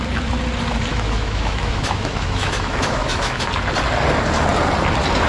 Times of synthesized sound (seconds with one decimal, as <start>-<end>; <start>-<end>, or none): 0.9-3.4